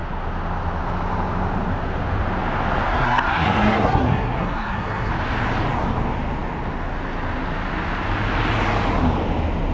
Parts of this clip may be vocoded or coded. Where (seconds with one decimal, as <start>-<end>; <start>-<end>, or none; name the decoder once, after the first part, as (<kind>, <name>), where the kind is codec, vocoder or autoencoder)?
2.9-5.1 (codec, SNAC)